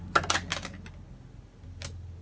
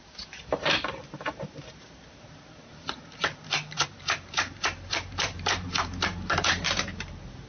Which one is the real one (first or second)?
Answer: first